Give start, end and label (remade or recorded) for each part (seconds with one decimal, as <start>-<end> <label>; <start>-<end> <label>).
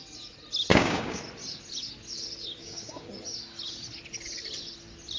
0.0-0.7 recorded; 0.7-1.2 remade; 1.2-2.6 recorded; 2.6-3.1 remade; 3.1-5.2 recorded